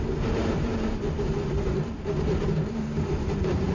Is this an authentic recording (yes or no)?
no